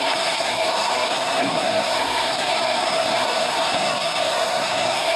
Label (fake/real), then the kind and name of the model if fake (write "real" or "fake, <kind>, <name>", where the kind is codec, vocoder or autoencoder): fake, codec, SNAC